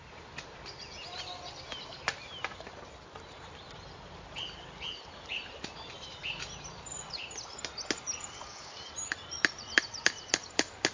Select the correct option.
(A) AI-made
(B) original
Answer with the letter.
B